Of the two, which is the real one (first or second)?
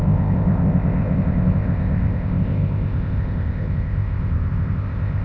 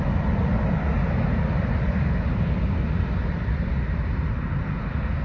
second